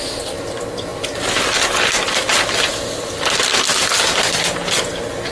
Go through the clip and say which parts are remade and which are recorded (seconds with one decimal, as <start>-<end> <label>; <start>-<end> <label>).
0.0-5.3 recorded